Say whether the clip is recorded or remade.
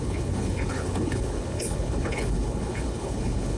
remade